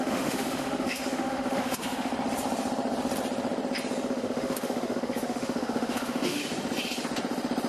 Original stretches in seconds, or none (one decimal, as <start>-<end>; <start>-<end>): 2.1-4.1; 6.4-7.7